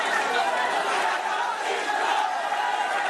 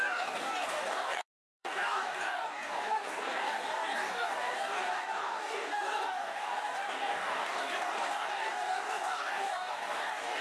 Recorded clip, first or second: first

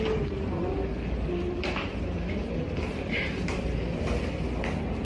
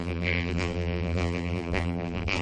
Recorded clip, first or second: first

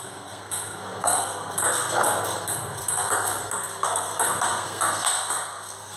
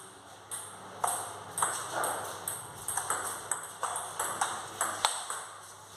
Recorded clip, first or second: second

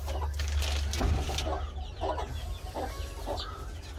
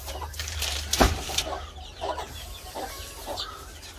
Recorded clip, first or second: first